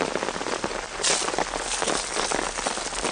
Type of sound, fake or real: real